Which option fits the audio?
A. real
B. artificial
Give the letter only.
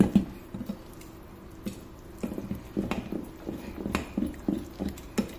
A